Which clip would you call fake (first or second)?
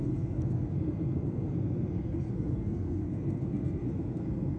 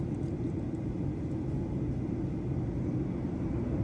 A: first